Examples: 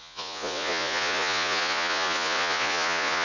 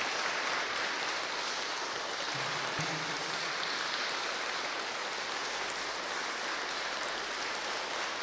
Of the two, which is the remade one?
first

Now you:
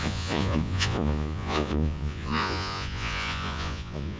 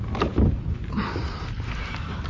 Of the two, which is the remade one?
first